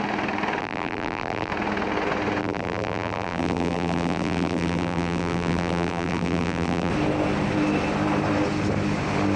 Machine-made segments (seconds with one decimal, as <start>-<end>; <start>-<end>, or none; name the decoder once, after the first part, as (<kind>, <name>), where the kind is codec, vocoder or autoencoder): 0.6-1.5 (vocoder, BigVGAN v2); 2.4-6.9

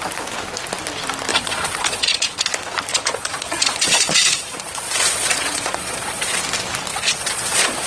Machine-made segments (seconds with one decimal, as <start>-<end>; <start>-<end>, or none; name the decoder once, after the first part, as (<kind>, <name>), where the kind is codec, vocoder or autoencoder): 1.3-2.4 (vocoder, Vocos); 2.9-6.4; 6.9-7.9

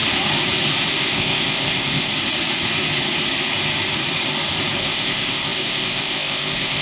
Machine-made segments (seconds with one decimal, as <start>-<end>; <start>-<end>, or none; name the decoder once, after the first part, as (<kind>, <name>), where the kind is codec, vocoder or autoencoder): 0.9-2.1 (codec, ZipCodec); 4.8-6.8

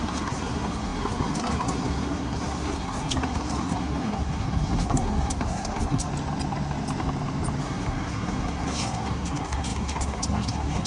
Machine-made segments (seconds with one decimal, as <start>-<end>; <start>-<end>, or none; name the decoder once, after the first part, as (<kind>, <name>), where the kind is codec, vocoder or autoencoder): 0.0-6.1 (codec, SNAC); 7.6-10.9

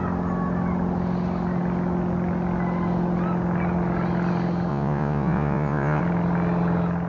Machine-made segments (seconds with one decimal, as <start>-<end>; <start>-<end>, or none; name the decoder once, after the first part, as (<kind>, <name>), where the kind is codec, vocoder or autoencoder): 4.7-6.0 (vocoder, Vocos)